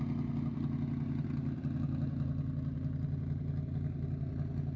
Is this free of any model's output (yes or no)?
yes